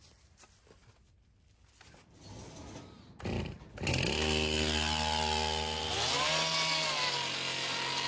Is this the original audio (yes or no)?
yes